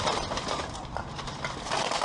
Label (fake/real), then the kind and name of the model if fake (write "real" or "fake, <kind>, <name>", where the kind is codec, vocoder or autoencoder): fake, vocoder, BigVGAN v2